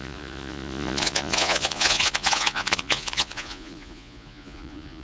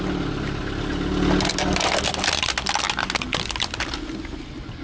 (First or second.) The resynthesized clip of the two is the first